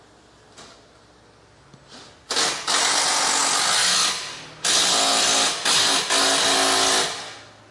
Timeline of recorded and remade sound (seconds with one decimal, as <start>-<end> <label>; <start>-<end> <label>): 0.0-7.7 recorded